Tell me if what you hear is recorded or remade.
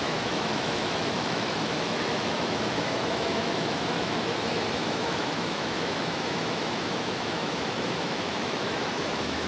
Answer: remade